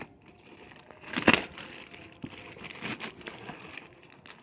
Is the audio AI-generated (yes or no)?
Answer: no